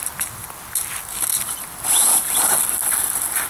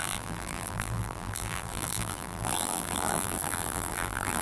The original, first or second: first